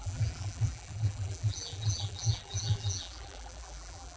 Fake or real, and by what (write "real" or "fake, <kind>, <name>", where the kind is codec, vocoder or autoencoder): fake, vocoder, BigVGAN v2